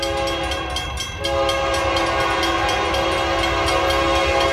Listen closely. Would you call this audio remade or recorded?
recorded